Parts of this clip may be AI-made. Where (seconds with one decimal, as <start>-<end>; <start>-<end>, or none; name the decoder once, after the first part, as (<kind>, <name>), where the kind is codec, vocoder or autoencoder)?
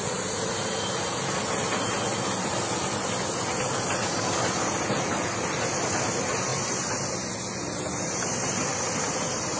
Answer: none